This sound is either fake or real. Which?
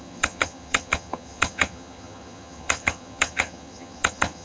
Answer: fake